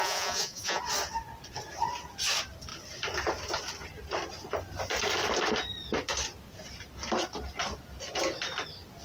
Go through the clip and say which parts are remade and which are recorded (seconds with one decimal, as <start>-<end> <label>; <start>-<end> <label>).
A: 0.0-0.8 remade; 0.8-9.0 recorded